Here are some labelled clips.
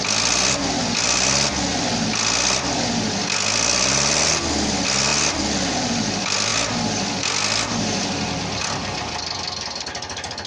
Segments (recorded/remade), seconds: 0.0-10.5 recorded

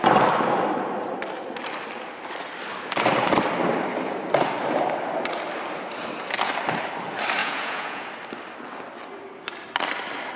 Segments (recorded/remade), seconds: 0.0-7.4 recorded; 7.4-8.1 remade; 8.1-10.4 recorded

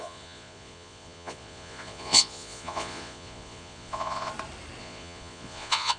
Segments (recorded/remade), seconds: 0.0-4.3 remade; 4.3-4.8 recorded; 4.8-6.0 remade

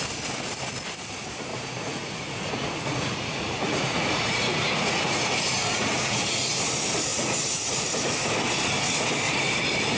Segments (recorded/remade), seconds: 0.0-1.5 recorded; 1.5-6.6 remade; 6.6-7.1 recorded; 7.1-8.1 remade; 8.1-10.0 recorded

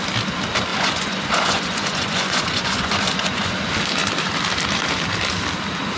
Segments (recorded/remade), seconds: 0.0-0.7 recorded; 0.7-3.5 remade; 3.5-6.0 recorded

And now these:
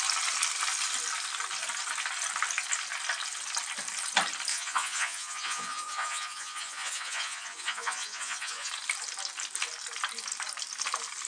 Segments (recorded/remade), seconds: 0.0-4.5 recorded; 4.5-8.7 remade; 8.7-11.3 recorded

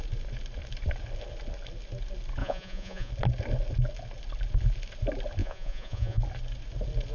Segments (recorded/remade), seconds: 0.0-2.4 recorded; 2.4-3.1 remade; 3.1-5.4 recorded; 5.4-6.2 remade; 6.2-7.1 recorded

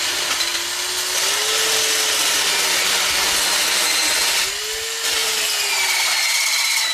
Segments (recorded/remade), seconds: 0.0-6.9 recorded